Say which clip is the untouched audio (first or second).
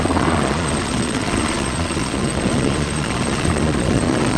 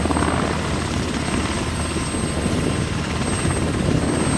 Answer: second